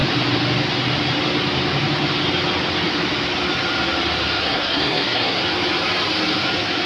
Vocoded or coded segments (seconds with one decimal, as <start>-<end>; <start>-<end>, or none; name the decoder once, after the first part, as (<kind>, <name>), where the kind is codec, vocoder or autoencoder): 4.4-5.4 (codec, SNAC)